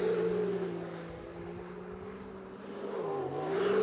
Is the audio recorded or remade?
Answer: recorded